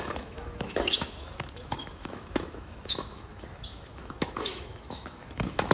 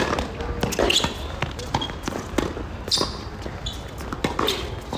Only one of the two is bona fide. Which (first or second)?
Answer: second